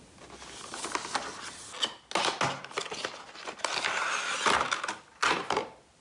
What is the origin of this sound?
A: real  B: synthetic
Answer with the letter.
A